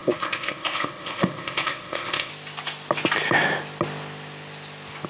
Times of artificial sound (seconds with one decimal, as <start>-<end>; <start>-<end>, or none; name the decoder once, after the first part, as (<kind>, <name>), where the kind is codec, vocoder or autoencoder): 0.0-2.3 (codec, ZipCodec)